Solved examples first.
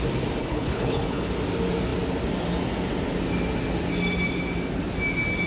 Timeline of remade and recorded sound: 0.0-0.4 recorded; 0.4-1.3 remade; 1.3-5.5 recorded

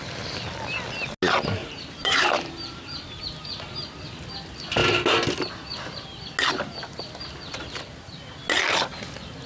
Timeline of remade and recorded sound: 0.0-1.6 recorded; 1.6-3.2 remade; 3.2-9.5 recorded

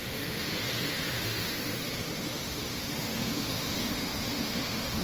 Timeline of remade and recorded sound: 0.0-5.0 remade

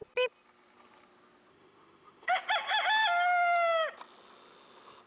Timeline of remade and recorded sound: 0.0-1.5 recorded; 1.5-2.4 remade; 2.4-5.1 recorded

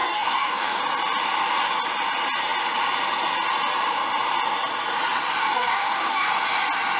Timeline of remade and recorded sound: 0.0-0.8 remade; 0.8-5.4 recorded; 5.4-6.3 remade; 6.3-7.0 recorded